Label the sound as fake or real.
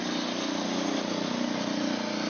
real